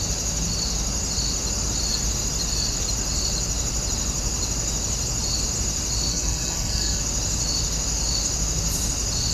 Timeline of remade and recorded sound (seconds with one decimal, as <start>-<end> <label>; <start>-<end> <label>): 0.0-6.1 recorded; 6.1-7.0 remade; 7.0-9.3 recorded